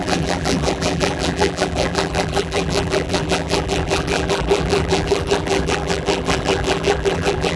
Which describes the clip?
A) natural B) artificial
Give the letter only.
B